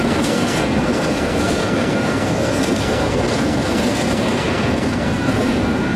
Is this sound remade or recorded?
remade